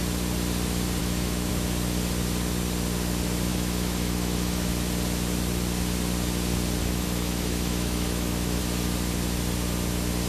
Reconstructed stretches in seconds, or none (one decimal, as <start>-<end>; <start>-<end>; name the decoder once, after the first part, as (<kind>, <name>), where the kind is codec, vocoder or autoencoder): 1.0-1.5 (autoencoder, DAC-VAE); 3.5-4.7; 6.8-8.6